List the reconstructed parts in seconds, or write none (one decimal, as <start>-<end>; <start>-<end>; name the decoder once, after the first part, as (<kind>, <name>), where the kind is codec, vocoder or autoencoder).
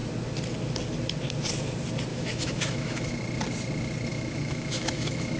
2.1-3.1 (autoencoder, DAC-VAE); 4.1-5.4